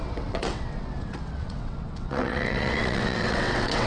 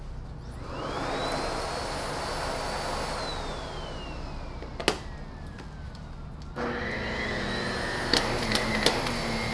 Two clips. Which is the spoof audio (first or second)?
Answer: first